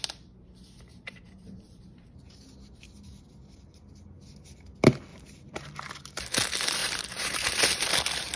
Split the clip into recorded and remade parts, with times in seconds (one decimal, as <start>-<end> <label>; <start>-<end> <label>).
0.0-0.9 recorded; 0.9-2.3 remade; 2.3-5.1 recorded; 5.1-5.9 remade; 5.9-6.8 recorded; 6.8-7.6 remade; 7.6-8.4 recorded